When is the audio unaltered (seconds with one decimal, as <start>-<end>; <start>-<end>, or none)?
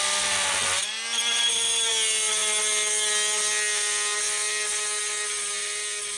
0.0-6.2